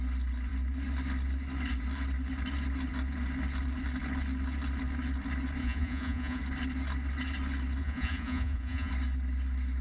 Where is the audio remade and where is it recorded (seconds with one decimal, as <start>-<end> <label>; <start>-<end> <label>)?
0.0-5.6 recorded; 5.6-6.4 remade; 6.4-7.8 recorded; 7.8-8.9 remade; 8.9-9.8 recorded